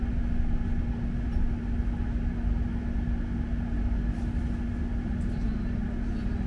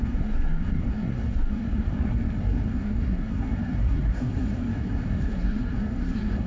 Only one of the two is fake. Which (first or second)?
second